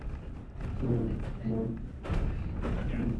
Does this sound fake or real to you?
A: real